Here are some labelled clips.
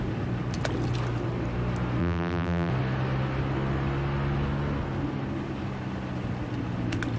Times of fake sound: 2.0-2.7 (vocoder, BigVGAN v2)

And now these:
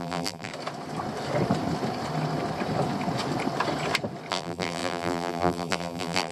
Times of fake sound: 0.0-0.5 (vocoder, BigVGAN v2); 4.3-6.3

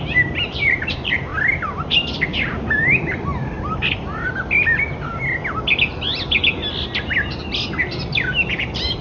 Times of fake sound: 0.0-1.3 (vocoder, BigVGAN v2); 2.2-3.4; 8.5-9.0

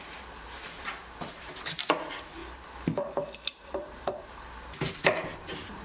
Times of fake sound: 0.0-2.4 (vocoder, BigVGAN v2); 4.2-5.8

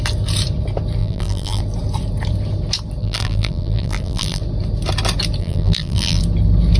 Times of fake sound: 1.0-1.6 (vocoder, BigVGAN v2); 3.0-4.4; 5.4-6.2

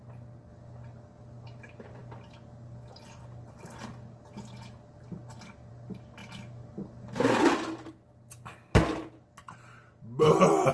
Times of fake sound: none

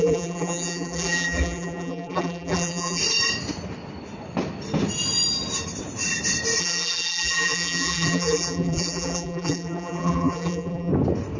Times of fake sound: 0.0-3.0 (vocoder, BigVGAN v2); 6.6-10.9